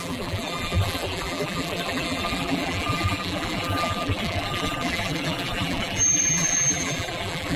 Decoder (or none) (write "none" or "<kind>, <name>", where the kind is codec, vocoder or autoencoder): vocoder, BigVGAN v2